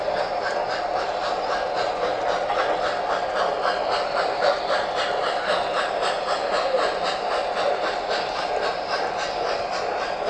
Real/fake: real